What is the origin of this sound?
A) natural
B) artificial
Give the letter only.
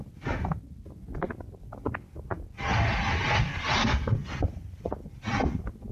A